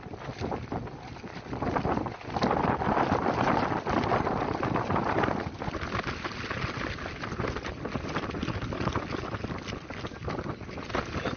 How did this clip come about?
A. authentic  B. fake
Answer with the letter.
A